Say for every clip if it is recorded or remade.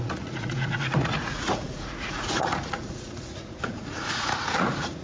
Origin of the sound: remade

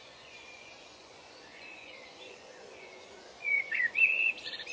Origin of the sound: remade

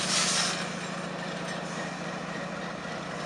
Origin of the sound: recorded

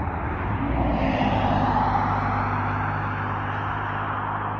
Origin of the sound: recorded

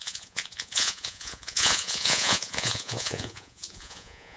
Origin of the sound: remade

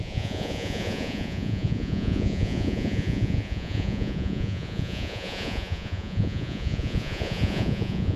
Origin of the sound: remade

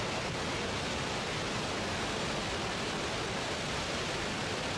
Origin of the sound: recorded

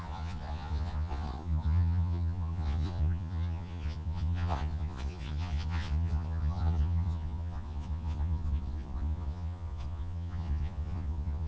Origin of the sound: remade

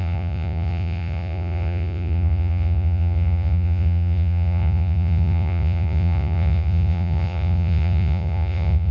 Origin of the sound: remade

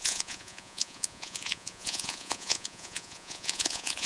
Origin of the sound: remade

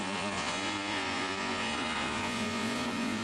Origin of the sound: remade